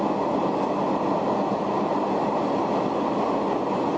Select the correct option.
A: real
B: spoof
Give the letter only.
A